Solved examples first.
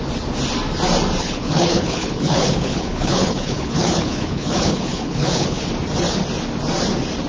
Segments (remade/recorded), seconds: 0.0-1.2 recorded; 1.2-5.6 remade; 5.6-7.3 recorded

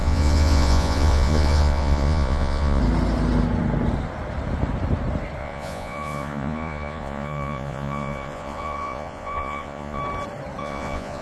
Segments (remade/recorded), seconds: 0.0-2.8 remade; 2.8-5.4 recorded; 5.4-10.0 remade; 10.0-10.6 recorded; 10.6-11.2 remade

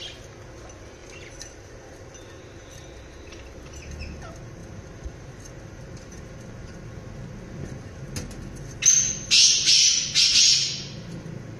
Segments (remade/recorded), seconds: 0.0-1.0 recorded; 1.0-1.7 remade; 1.7-11.6 recorded

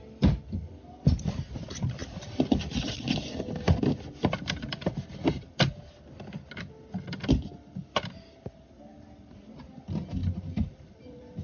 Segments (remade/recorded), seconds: 0.0-10.2 recorded; 10.2-11.4 remade

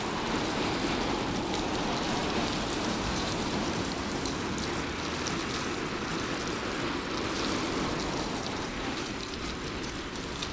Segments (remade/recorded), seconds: 0.0-2.2 recorded; 2.2-4.3 remade; 4.3-8.4 recorded; 8.4-9.5 remade; 9.5-10.5 recorded

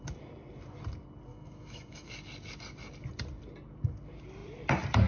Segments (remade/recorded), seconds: 0.0-1.3 recorded; 1.3-2.1 remade; 2.1-5.1 recorded

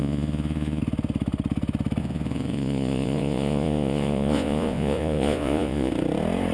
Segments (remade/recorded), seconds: 0.0-0.8 remade; 0.8-2.0 recorded; 2.0-5.9 remade; 5.9-6.5 recorded

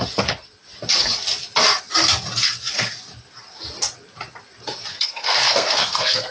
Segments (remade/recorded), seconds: 0.0-4.9 recorded; 4.9-6.3 remade